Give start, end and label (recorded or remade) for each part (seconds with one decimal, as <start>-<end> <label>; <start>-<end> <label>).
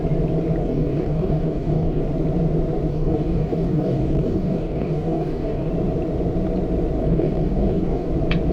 0.0-0.6 recorded; 0.6-2.0 remade; 2.0-2.9 recorded; 2.9-5.7 remade; 5.7-7.0 recorded; 7.0-8.1 remade; 8.1-8.5 recorded